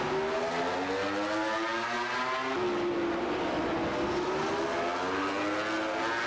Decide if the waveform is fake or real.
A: real